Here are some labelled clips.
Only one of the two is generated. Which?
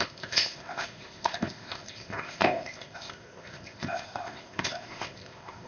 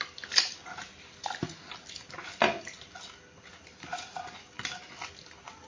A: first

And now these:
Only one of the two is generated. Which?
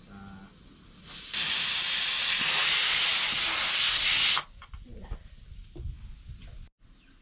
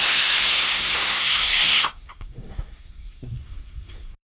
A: second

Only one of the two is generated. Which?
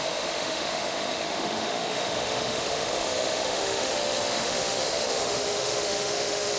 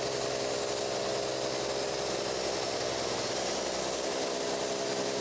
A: first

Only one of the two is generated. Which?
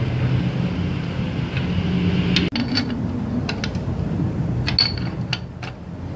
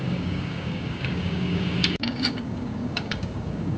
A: second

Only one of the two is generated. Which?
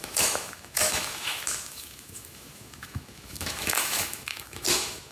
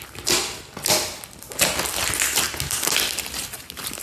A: first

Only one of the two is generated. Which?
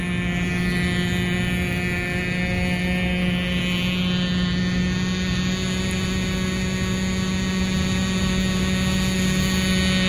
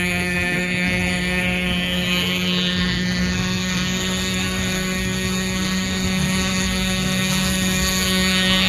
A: second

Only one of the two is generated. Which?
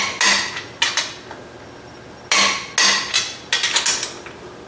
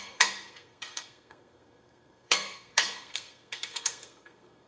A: second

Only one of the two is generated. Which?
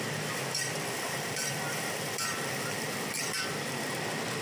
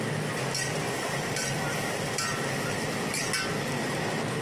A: first